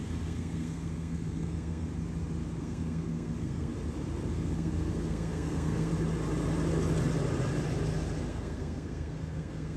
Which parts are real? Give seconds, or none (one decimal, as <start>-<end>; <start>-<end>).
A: 1.9-2.6; 3.7-4.3; 5.9-8.3